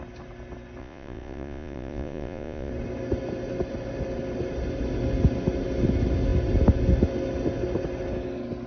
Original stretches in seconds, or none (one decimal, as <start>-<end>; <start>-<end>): 0.0-0.8; 2.7-8.7